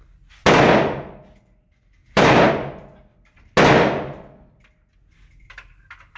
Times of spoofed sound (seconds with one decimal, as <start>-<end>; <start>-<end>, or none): 2.0-2.5